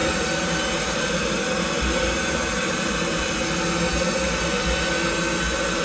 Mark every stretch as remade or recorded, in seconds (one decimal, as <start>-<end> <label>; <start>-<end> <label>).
0.0-3.5 remade; 3.5-3.9 recorded; 3.9-4.8 remade; 4.8-5.8 recorded